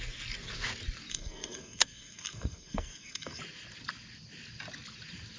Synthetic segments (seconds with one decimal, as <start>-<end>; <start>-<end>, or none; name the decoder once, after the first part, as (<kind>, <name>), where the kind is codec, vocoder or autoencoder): 1.1-3.4 (codec, SNAC)